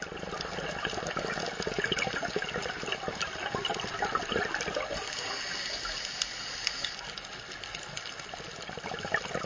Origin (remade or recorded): recorded